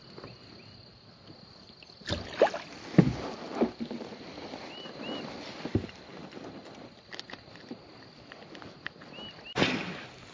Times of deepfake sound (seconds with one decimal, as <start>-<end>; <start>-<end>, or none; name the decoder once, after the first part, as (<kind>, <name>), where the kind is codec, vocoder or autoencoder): none